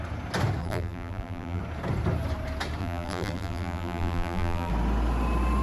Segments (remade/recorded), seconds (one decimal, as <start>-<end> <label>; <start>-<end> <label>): 0.0-0.6 recorded; 0.6-1.6 remade; 1.6-2.8 recorded; 2.8-4.7 remade; 4.7-5.6 recorded